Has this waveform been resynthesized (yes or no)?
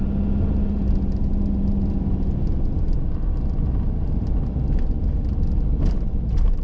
no